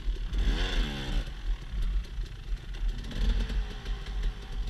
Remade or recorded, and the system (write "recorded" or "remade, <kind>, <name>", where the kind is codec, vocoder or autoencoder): recorded